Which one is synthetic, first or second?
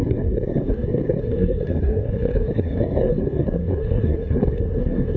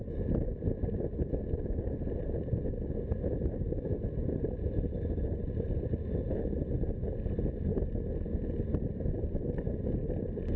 first